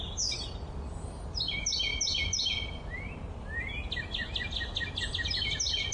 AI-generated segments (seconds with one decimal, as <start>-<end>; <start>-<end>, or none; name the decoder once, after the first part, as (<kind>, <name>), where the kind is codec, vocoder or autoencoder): none